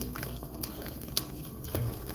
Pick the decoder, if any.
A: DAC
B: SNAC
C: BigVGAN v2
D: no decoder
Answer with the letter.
B